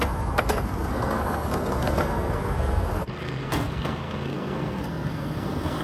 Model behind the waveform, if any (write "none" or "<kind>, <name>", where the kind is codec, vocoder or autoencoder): codec, SNAC